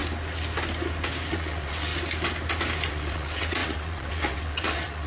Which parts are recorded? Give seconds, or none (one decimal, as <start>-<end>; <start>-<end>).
0.0-1.3; 1.9-2.9